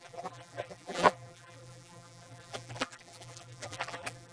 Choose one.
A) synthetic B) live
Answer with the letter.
A